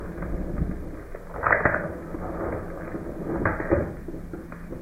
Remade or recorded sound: recorded